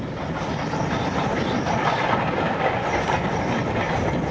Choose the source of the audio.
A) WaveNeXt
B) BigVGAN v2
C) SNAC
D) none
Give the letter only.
D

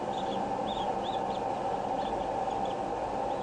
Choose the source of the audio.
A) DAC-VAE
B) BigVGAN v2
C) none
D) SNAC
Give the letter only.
C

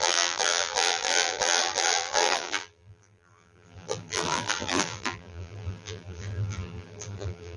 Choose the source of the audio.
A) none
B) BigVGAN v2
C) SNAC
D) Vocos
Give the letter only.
B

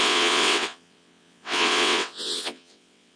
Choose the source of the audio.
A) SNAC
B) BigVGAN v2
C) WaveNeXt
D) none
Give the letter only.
C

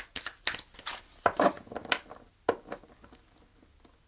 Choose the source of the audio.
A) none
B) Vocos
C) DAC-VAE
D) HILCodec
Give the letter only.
A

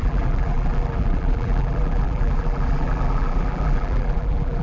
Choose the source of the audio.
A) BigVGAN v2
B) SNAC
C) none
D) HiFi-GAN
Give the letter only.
A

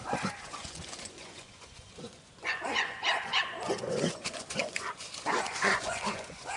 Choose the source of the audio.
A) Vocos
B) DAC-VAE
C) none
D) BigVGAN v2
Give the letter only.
A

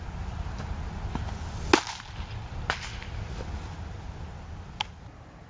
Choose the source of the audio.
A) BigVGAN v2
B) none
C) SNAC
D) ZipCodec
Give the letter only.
B